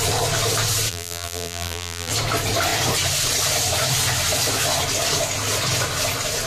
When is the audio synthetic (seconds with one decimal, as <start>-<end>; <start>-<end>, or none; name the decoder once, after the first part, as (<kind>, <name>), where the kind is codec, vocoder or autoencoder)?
0.9-2.1 (vocoder, BigVGAN v2)